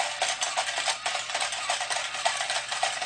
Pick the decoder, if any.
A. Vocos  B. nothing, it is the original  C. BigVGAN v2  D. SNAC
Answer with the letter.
B